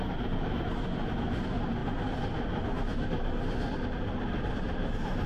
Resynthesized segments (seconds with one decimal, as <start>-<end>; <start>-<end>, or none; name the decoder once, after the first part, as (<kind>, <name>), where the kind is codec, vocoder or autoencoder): none

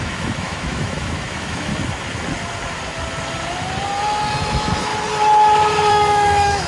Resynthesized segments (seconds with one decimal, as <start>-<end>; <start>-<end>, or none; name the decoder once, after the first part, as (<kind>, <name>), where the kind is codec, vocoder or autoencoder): 0.0-1.7 (autoencoder, DAC-VAE); 4.4-4.9; 5.9-6.7

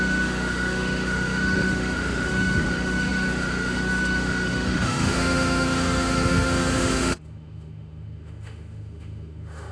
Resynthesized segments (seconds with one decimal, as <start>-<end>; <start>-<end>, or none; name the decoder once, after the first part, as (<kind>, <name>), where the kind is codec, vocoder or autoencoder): 0.0-9.7 (autoencoder, DAC-VAE)

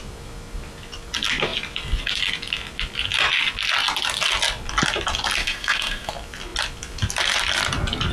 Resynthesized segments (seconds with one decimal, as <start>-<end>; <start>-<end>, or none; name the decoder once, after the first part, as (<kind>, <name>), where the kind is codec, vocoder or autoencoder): 5.4-6.1 (autoencoder, DAC-VAE)

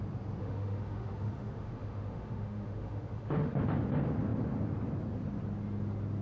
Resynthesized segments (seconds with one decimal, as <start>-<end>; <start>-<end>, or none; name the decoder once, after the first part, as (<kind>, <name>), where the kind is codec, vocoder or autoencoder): 0.4-3.6 (autoencoder, DAC-VAE)

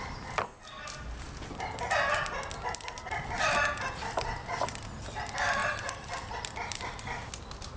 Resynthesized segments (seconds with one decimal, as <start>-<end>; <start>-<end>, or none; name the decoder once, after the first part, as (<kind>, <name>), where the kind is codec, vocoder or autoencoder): none

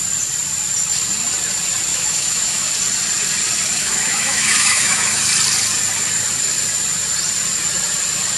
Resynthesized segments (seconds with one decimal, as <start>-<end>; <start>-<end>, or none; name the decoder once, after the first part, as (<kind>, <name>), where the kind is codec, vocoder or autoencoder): 1.9-2.7 (autoencoder, DAC-VAE); 3.8-5.2

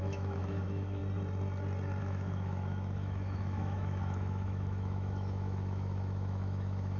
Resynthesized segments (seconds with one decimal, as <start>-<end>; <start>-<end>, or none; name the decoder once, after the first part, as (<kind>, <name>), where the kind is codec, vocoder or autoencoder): 0.0-1.0 (autoencoder, DAC-VAE); 2.0-7.0